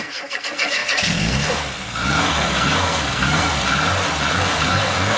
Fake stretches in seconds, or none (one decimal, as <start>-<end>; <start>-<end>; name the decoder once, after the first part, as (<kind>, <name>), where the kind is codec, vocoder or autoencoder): 0.0-3.5 (codec, SNAC); 4.3-5.2